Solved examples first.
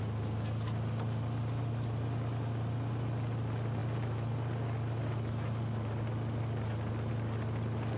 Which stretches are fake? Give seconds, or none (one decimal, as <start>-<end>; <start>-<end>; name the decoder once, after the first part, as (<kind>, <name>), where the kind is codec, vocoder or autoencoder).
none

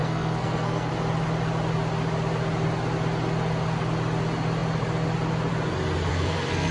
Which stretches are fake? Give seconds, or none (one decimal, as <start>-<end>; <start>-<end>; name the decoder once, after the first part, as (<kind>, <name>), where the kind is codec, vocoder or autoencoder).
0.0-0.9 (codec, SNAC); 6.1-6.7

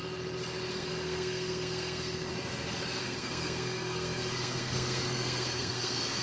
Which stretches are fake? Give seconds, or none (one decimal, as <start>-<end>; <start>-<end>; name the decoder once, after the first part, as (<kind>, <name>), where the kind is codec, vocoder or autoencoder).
0.7-2.3 (codec, SNAC); 3.0-6.2